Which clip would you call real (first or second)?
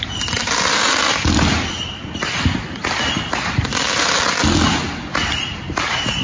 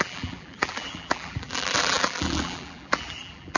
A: first